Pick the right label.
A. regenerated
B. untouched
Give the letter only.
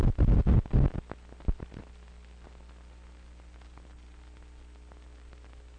B